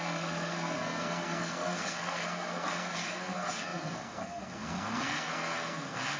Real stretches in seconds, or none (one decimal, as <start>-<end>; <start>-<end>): none